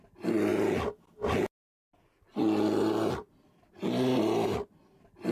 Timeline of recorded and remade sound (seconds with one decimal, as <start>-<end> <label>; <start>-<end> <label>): 0.0-5.3 recorded